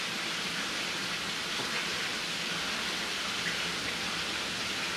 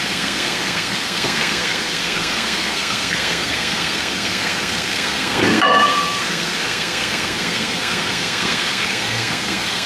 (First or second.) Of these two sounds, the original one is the first